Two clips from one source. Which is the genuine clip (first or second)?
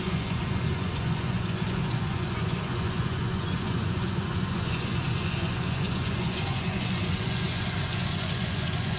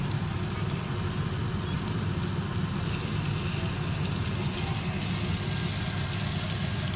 second